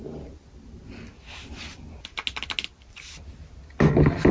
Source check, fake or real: real